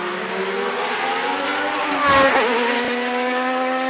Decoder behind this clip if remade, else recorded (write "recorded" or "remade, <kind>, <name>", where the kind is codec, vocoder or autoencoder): recorded